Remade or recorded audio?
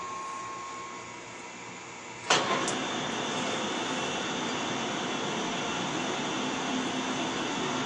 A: recorded